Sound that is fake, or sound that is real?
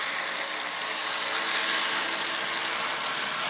real